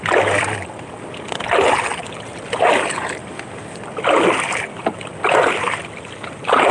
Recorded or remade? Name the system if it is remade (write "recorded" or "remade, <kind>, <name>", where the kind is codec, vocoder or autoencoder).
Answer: recorded